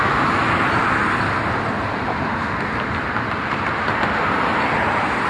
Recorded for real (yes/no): yes